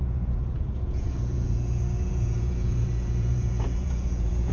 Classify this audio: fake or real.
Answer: fake